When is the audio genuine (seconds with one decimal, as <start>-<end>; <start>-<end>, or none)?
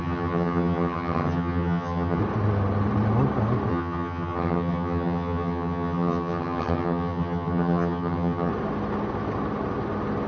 2.2-3.7; 8.5-10.3